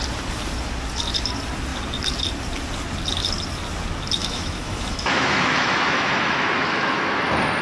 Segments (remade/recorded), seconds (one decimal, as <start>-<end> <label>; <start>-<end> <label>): 0.0-4.2 recorded; 4.2-7.1 remade; 7.1-7.6 recorded